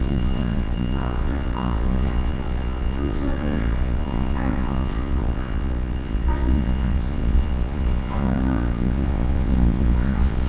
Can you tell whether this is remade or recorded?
remade